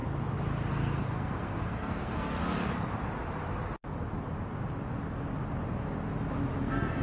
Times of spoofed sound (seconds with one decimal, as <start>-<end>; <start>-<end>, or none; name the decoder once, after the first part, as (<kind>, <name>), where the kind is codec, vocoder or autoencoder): 0.7-2.4 (codec, SNAC); 6.6-7.0